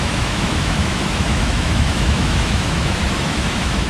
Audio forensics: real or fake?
fake